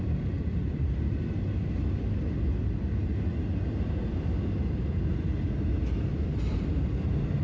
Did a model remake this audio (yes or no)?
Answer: no